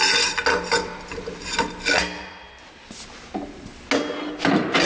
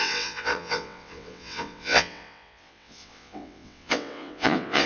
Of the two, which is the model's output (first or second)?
second